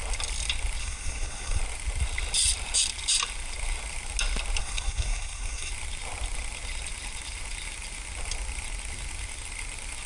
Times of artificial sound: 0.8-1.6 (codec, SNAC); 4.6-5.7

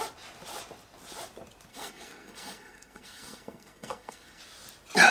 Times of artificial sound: 1.7-4.4 (codec, SNAC)